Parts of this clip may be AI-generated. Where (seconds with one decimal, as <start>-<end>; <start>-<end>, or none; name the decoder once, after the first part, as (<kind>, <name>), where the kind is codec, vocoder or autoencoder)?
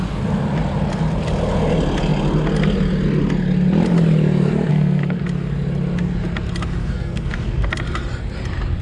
4.7-5.2 (codec, SNAC); 6.8-7.7